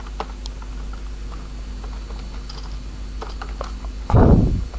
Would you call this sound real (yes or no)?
yes